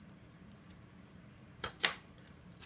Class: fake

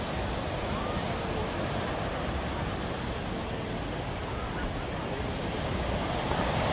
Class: real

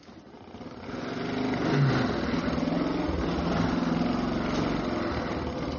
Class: real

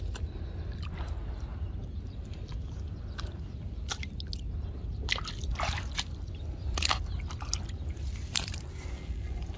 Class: real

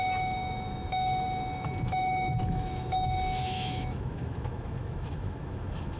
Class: fake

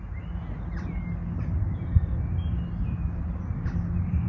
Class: real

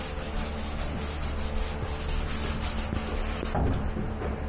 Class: real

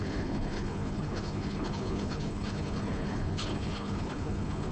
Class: fake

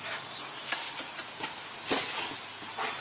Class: real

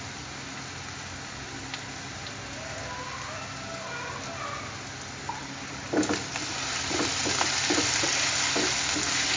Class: real